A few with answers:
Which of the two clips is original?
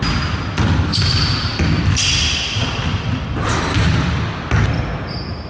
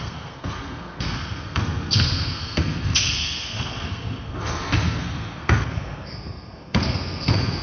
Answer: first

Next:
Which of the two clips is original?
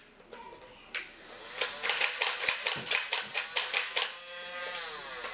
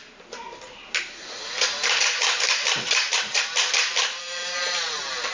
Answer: first